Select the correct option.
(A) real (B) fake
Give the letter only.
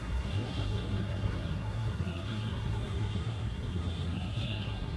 B